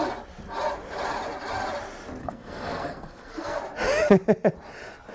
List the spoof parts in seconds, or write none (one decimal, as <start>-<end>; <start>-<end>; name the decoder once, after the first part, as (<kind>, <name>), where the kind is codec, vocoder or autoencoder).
2.2-3.6 (codec, SNAC)